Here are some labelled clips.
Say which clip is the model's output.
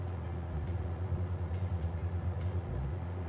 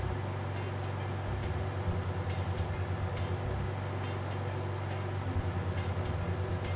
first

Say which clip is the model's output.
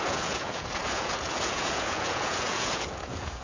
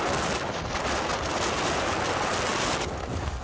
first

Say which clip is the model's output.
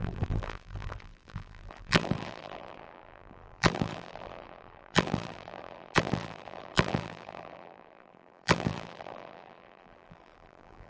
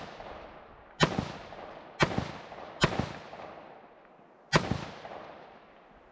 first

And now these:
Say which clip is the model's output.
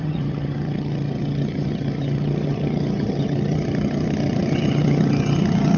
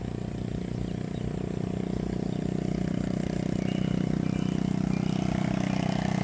first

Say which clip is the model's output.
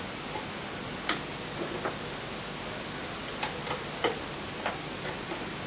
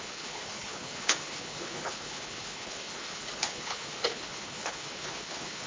second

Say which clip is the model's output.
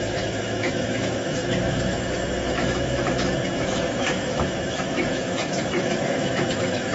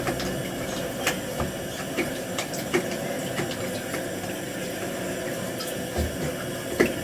first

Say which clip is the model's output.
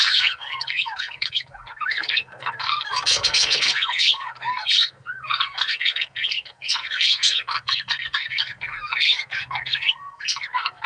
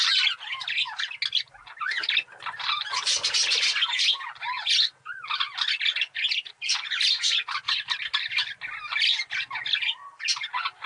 first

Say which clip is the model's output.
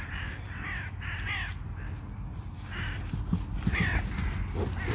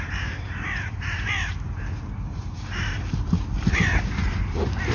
second